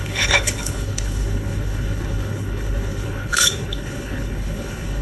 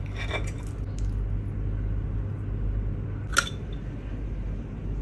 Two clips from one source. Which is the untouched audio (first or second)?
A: second